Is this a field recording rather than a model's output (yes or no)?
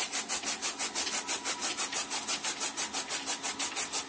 yes